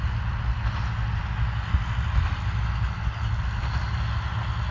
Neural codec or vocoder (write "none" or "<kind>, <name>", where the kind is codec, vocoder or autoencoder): none